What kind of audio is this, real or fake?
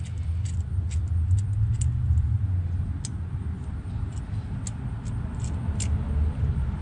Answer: real